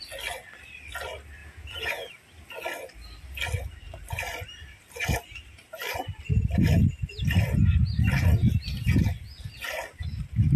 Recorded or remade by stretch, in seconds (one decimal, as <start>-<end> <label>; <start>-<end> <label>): 0.0-1.4 recorded; 1.4-2.1 remade; 2.1-10.6 recorded